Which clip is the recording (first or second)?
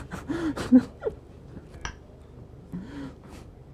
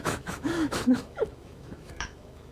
first